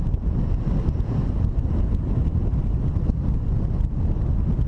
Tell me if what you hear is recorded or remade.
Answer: recorded